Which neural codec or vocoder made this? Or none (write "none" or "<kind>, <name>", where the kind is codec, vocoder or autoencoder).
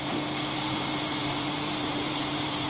vocoder, BigVGAN v2